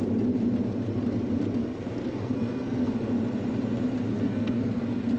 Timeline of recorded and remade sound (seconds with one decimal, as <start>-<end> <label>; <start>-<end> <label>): 0.0-1.6 recorded; 1.6-2.9 remade; 2.9-4.1 recorded; 4.1-4.8 remade; 4.8-5.2 recorded